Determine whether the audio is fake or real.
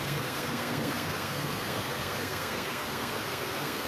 fake